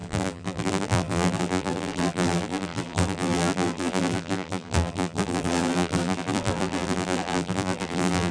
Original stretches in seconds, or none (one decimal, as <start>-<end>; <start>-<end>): none